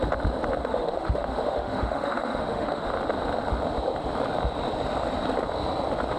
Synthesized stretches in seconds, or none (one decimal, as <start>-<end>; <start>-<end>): 0.6-2.9